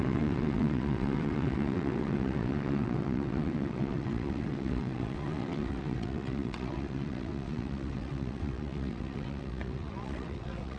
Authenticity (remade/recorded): remade